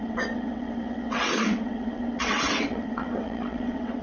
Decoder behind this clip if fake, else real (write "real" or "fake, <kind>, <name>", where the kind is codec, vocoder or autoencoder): fake, vocoder, WaveNeXt